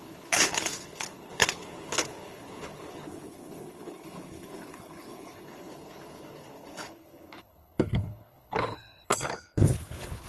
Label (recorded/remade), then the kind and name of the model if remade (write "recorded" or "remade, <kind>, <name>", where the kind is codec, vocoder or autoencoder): remade, codec, HILCodec